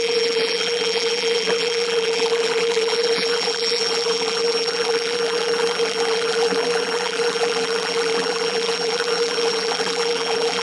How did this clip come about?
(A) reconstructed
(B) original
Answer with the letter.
A